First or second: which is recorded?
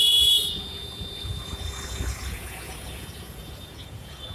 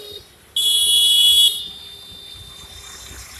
second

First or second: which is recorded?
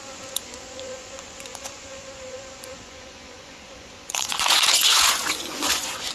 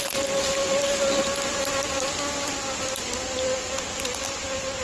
second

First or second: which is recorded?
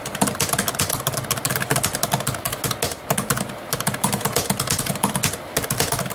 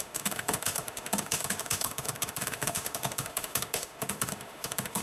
first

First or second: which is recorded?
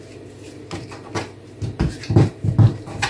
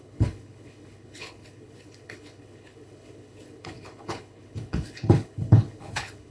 first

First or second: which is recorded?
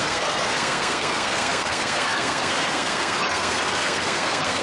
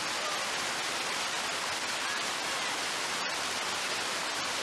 second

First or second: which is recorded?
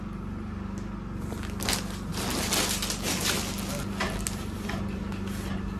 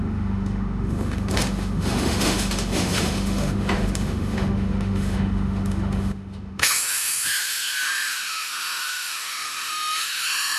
first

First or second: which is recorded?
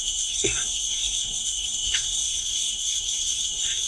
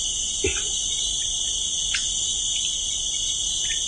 second